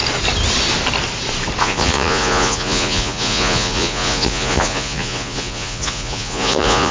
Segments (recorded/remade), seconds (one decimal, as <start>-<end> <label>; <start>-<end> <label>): 0.0-1.6 recorded; 1.6-6.9 remade